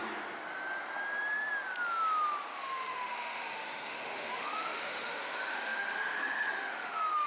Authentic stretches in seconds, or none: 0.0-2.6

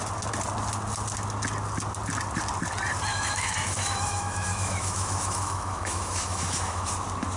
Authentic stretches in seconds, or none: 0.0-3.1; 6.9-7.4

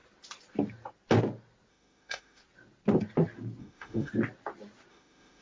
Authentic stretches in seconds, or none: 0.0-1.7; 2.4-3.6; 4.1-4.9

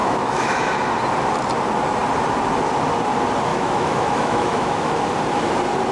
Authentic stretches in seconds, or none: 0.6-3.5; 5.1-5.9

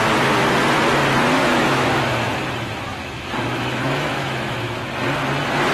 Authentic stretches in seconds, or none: 0.0-1.4; 4.8-5.7

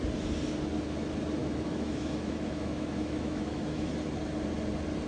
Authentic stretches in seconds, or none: 0.0-1.4; 3.9-5.1